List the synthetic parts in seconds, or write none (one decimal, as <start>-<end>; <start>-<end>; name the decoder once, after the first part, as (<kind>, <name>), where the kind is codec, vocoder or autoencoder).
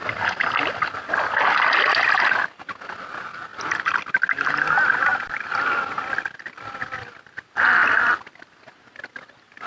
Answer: 5.1-5.8 (vocoder, BigVGAN v2)